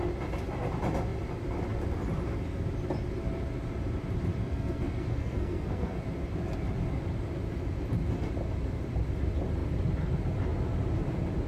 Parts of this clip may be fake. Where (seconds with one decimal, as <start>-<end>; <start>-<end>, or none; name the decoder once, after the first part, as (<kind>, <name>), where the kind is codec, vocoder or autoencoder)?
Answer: 4.4-6.0 (codec, SNAC)